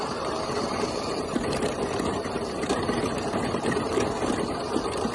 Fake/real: fake